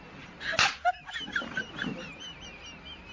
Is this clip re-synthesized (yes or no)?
no